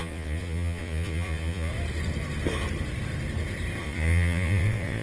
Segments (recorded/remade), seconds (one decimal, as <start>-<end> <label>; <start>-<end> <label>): 0.0-1.7 remade; 1.7-3.8 recorded; 3.8-5.0 remade